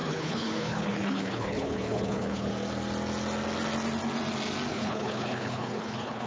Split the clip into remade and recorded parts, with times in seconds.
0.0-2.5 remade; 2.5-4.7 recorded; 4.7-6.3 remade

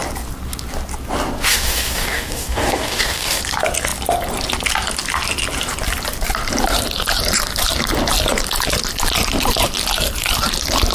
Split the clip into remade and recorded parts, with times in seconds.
0.0-1.5 recorded; 1.5-3.4 remade; 3.4-10.9 recorded

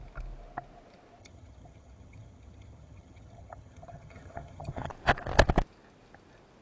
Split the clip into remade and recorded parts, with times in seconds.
0.0-1.2 recorded; 1.2-4.9 remade; 4.9-6.6 recorded